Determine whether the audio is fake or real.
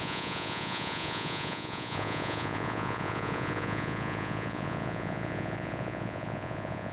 fake